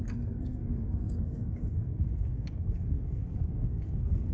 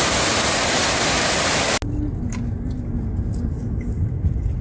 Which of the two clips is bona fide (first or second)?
second